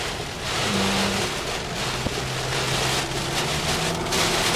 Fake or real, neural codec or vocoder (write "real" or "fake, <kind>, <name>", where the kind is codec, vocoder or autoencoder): real